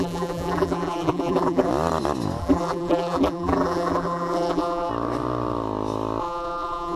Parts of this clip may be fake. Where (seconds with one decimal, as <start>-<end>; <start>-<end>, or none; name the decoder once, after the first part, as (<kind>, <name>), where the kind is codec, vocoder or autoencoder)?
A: 0.0-1.7 (vocoder, BigVGAN v2); 2.4-4.9; 6.2-7.0